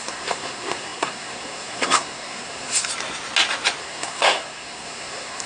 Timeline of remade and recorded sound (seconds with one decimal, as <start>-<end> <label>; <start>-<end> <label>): 0.0-2.9 remade; 2.9-3.8 recorded; 3.8-5.5 remade